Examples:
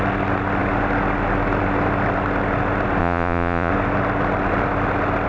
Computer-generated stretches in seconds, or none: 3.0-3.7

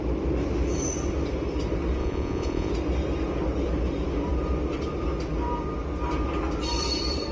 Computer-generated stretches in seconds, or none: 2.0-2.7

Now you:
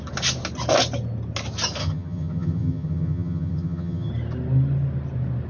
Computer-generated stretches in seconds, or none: 1.8-4.1